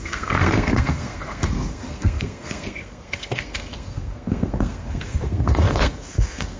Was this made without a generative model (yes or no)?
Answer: no